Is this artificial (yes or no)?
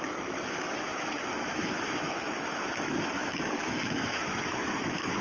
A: yes